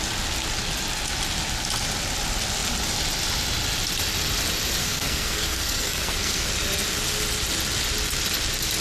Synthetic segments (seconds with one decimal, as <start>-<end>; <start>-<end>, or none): 4.8-6.5